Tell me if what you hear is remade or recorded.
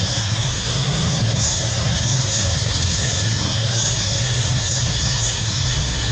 remade